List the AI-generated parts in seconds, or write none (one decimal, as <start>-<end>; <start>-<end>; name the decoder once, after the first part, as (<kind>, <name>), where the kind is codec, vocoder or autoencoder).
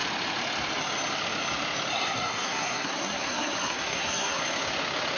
1.9-4.4 (codec, SNAC)